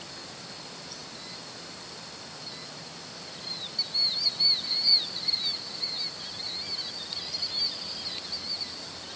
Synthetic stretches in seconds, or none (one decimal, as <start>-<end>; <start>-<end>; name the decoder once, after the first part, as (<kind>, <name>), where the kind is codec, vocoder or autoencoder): none